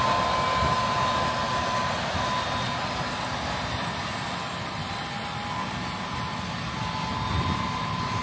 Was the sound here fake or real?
real